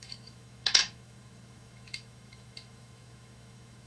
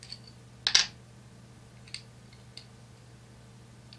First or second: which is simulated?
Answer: first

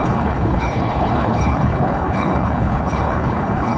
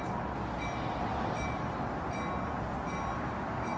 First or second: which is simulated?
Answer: first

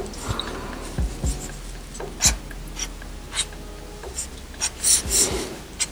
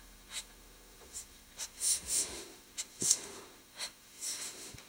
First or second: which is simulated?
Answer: second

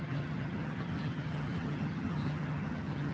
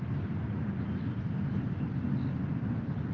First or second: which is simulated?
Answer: first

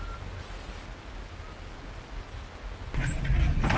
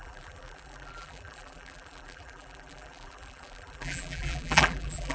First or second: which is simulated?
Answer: second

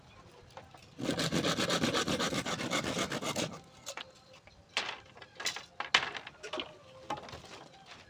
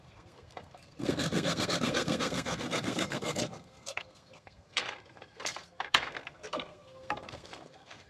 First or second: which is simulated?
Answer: second